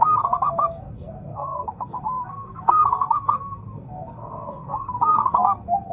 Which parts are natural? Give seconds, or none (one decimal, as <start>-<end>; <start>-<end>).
none